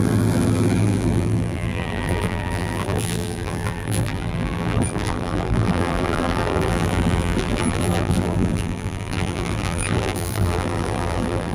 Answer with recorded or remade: remade